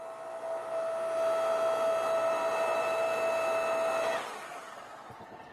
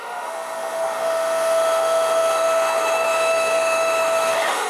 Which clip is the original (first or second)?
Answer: first